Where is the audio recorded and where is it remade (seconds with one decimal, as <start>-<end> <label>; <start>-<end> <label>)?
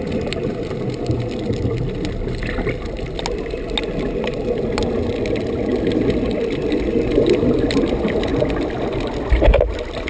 0.0-10.1 recorded